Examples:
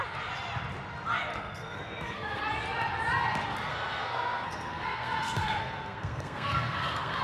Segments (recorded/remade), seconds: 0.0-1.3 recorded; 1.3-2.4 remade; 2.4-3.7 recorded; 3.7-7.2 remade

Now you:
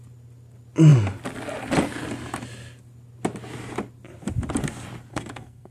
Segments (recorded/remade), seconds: 0.0-5.1 recorded; 5.1-5.7 remade

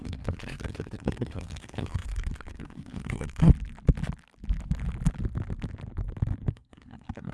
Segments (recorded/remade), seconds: 0.0-3.5 remade; 3.5-6.5 recorded; 6.5-7.3 remade

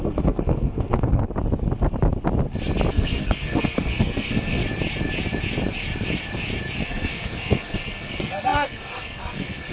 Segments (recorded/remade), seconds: 0.0-1.2 remade; 1.2-2.9 recorded; 2.9-4.6 remade; 4.6-6.8 recorded; 6.8-9.7 remade

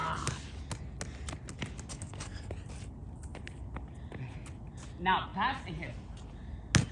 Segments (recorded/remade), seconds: 0.0-1.9 recorded; 1.9-2.5 remade; 2.5-6.9 recorded

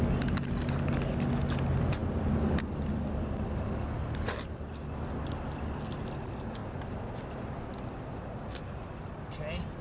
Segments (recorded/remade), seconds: 0.0-9.8 recorded

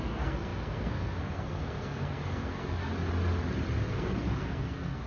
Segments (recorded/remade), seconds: 0.0-2.8 remade; 2.8-3.9 recorded; 3.9-5.1 remade

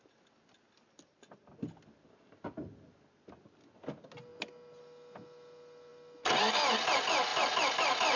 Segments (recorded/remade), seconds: 0.0-8.2 recorded